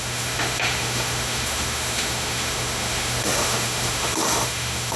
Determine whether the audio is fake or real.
fake